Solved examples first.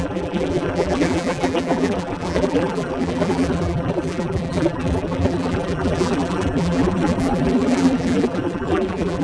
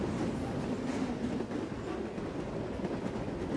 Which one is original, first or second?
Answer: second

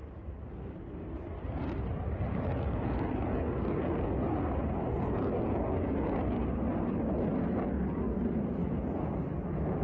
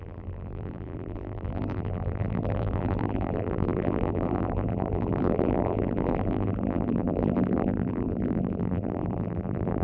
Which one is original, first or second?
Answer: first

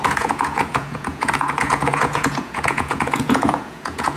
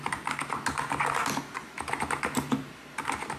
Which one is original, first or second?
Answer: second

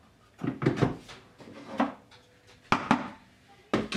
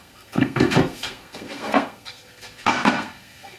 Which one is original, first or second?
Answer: first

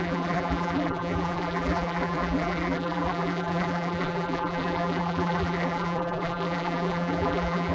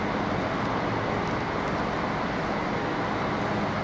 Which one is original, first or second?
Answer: second